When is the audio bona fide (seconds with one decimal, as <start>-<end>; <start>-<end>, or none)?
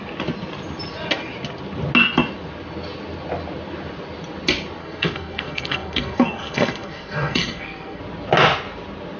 0.0-4.8; 8.0-9.2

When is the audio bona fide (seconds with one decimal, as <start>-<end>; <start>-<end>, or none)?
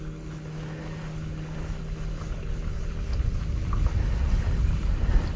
0.0-5.4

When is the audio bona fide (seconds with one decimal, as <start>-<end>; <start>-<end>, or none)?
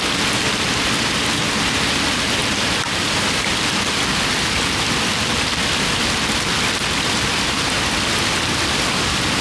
0.0-2.4; 3.4-9.4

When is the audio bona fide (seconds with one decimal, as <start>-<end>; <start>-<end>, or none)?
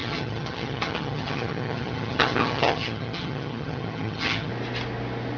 4.5-5.4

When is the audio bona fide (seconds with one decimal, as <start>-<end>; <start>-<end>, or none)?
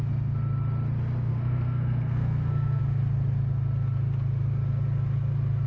0.0-1.3; 2.8-5.7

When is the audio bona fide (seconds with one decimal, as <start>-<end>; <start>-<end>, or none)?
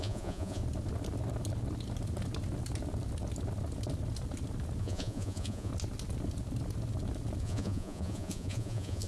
0.6-4.8; 5.7-7.4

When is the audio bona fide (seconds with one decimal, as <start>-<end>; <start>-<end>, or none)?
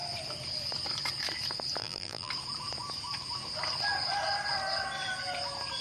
0.0-1.8; 2.3-5.8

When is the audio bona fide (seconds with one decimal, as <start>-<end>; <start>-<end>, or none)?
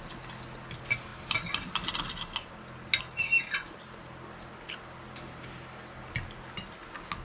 0.0-7.2